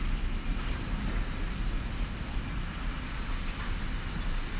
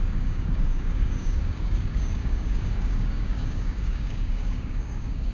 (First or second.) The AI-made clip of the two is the second